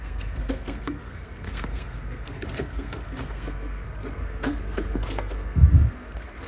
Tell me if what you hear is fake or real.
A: fake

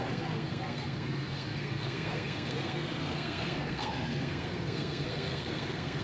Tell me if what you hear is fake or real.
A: fake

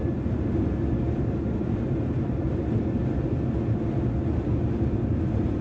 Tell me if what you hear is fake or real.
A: real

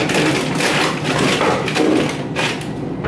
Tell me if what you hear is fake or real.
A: real